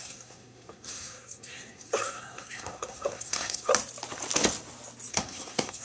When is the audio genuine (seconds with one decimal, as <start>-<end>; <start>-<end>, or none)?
3.7-5.1